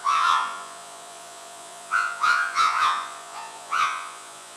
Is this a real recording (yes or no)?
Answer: no